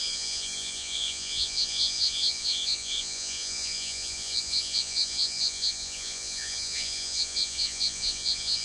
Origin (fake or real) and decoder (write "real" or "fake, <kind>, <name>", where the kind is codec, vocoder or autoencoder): fake, vocoder, Vocos